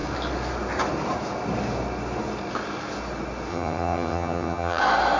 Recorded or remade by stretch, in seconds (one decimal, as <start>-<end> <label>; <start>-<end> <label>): 0.0-3.5 recorded; 3.5-4.8 remade; 4.8-5.2 recorded